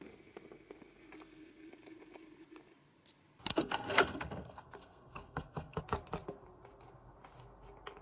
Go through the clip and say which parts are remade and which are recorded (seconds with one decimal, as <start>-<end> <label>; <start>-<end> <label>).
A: 0.0-3.5 recorded; 3.5-5.8 remade; 5.8-8.0 recorded